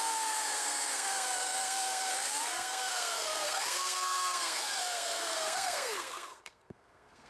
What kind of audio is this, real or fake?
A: fake